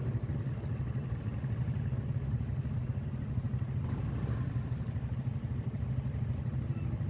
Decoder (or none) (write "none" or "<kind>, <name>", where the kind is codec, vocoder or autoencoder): none